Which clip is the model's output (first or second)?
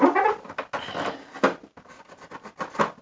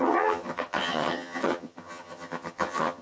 second